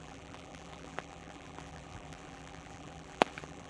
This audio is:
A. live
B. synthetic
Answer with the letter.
B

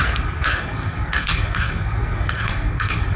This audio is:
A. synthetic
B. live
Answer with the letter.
A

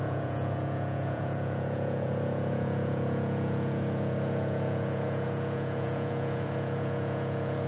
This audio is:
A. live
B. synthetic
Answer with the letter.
B